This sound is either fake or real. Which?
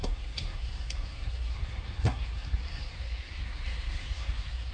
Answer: fake